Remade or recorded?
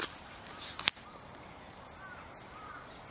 recorded